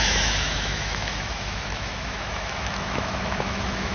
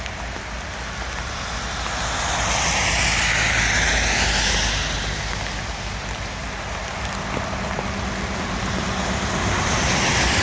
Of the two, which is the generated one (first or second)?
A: first